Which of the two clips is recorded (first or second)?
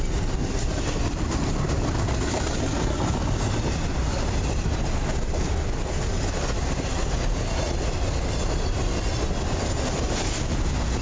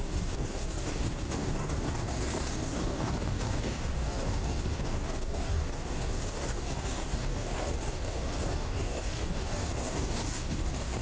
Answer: first